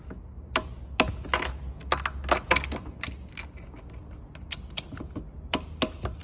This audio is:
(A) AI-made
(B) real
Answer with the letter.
B